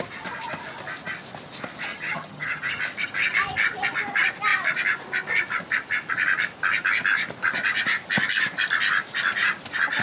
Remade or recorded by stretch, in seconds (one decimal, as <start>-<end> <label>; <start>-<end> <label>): 0.0-1.9 recorded; 1.9-2.7 remade; 2.7-10.0 recorded